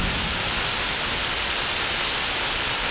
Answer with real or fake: real